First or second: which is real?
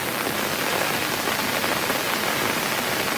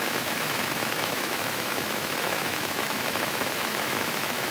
first